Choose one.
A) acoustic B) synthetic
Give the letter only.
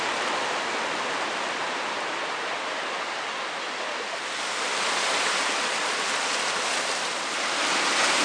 A